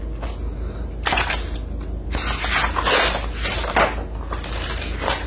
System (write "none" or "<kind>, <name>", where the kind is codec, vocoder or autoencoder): none